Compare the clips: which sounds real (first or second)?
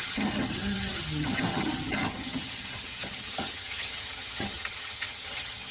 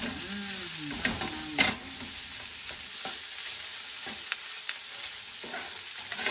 second